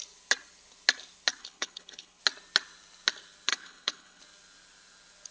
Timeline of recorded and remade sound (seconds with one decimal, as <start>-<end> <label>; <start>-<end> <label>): 0.0-1.4 recorded; 1.4-2.2 remade; 2.2-3.5 recorded; 3.5-4.2 remade; 4.2-5.3 recorded